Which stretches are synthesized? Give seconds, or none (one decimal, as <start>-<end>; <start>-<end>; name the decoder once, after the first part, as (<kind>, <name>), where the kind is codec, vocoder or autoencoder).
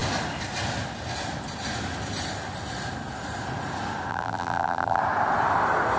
4.1-5.0 (vocoder, BigVGAN v2)